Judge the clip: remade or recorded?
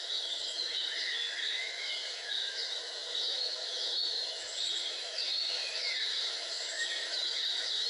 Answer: remade